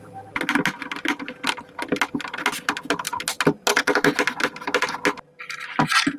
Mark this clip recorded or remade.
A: recorded